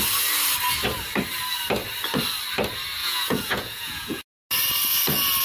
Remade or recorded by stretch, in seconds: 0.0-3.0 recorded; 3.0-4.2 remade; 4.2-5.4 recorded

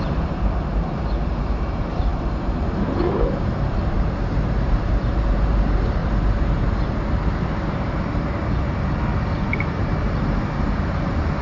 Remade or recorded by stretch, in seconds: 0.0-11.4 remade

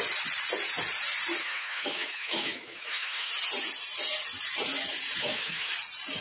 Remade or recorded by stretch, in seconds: 0.0-1.4 recorded; 1.4-3.3 remade; 3.3-5.2 recorded; 5.2-5.7 remade; 5.7-6.2 recorded